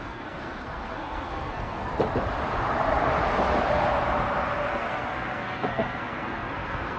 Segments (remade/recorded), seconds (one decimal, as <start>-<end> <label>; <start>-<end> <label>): 0.0-1.9 remade; 1.9-4.7 recorded; 4.7-7.0 remade